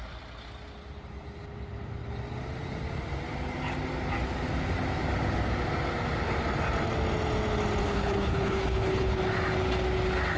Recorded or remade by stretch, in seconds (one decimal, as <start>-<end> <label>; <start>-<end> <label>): 0.0-7.8 recorded; 7.8-9.2 remade; 9.2-10.4 recorded